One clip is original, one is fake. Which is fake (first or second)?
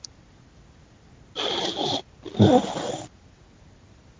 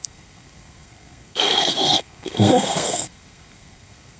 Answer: second